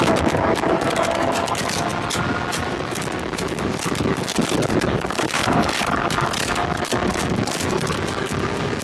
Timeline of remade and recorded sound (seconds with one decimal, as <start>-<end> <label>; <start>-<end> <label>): 0.0-1.9 remade; 1.9-2.6 recorded; 2.6-8.8 remade